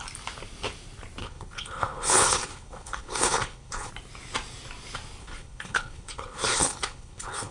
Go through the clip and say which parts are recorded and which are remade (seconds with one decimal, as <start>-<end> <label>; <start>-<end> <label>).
0.0-1.2 recorded; 1.2-3.9 remade; 3.9-5.2 recorded; 5.2-7.5 remade